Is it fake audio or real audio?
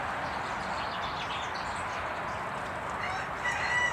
real